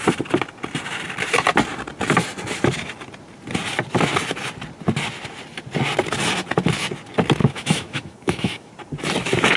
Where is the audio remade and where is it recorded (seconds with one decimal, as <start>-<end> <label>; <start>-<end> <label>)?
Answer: 0.0-7.4 recorded; 7.4-8.7 remade; 8.7-9.6 recorded